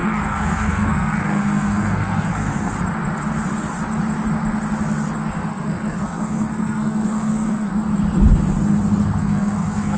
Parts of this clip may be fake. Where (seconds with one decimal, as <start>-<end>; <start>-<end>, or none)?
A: 0.0-2.7; 5.5-7.7; 9.2-10.0